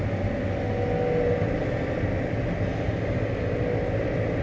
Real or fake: real